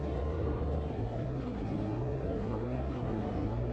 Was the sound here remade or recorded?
remade